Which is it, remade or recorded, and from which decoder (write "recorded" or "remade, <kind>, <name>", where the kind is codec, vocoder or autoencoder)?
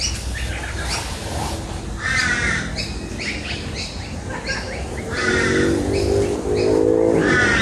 recorded